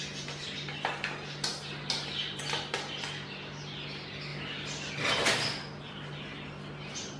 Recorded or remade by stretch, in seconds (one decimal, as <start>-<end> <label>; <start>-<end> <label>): 0.0-7.2 recorded